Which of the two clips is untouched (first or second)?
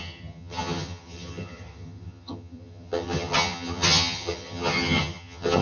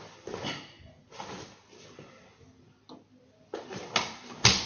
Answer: second